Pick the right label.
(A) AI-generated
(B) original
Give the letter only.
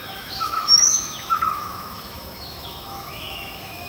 A